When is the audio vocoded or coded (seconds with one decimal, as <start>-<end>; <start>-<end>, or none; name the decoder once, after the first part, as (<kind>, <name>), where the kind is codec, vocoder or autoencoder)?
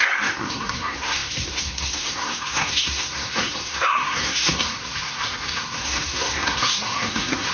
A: 0.0-7.5 (codec, SNAC)